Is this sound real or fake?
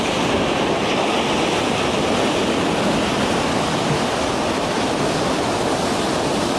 real